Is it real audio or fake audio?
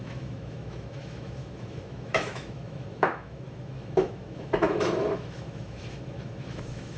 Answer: fake